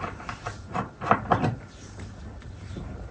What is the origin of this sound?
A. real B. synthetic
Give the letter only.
B